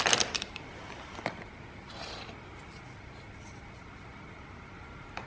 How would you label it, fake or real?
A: fake